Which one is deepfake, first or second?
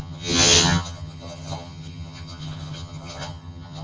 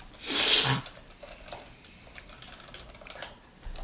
first